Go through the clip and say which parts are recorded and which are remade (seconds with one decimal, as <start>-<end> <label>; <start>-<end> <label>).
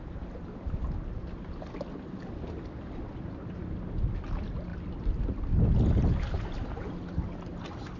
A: 0.0-8.0 recorded